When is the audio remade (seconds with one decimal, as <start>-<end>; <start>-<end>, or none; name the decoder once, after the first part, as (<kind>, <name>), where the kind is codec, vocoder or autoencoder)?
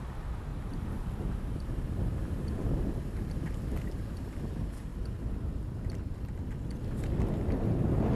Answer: 0.5-3.0 (vocoder, BigVGAN v2)